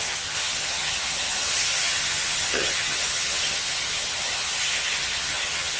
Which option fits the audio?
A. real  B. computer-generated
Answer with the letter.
B